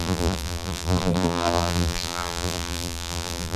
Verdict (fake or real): fake